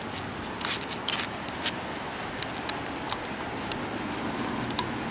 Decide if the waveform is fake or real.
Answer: real